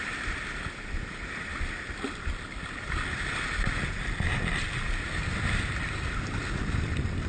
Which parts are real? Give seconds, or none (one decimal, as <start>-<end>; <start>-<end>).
0.0-7.3